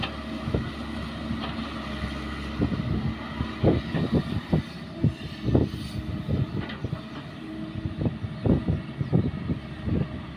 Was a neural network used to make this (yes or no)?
no